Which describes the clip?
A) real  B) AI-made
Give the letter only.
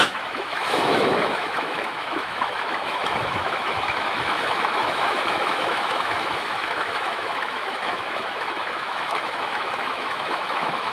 B